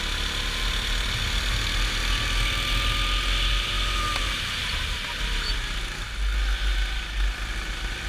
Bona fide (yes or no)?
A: yes